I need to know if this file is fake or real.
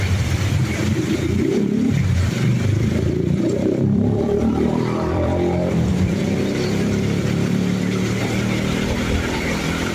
fake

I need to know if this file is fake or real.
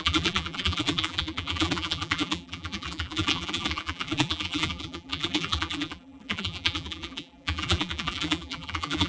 fake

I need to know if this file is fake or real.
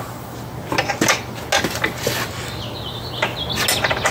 real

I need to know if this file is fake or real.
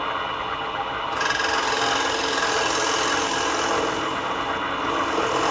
real